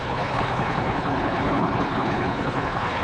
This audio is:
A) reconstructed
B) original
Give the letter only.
A